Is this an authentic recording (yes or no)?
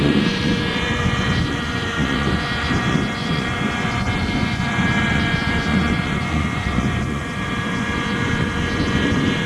no